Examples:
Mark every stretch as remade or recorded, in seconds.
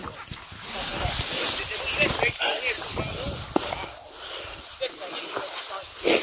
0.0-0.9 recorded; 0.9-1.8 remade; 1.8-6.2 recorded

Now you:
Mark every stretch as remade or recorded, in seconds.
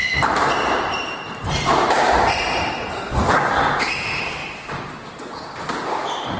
0.0-6.4 remade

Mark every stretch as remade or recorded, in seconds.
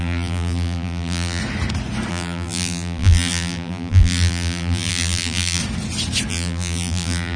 0.0-1.4 remade; 1.4-2.1 recorded; 2.1-5.6 remade; 5.6-6.3 recorded; 6.3-7.4 remade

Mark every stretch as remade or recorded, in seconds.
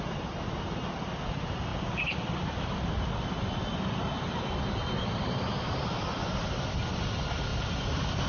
0.0-1.7 recorded; 1.7-6.7 remade; 6.7-7.5 recorded; 7.5-8.3 remade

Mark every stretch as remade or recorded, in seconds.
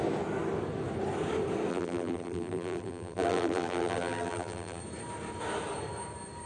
0.0-1.7 recorded; 1.7-4.8 remade; 4.8-6.5 recorded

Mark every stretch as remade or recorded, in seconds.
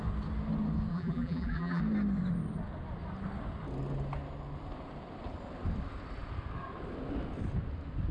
0.0-0.9 recorded; 0.9-1.8 remade; 1.8-8.1 recorded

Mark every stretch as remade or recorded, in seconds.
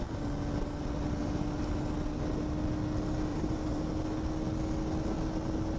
0.0-3.3 recorded; 3.3-3.8 remade; 3.8-5.8 recorded